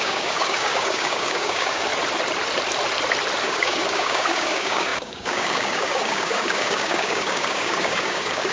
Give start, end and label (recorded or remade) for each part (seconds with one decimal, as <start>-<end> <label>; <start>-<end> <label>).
0.0-1.9 remade; 1.9-3.4 recorded; 3.4-8.5 remade